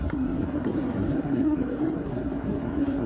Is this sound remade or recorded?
remade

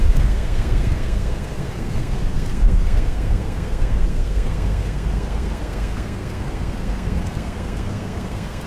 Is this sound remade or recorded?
remade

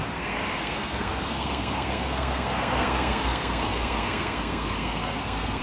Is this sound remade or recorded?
remade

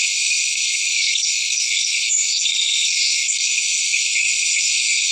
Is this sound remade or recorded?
remade